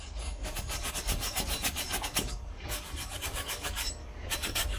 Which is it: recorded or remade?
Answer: remade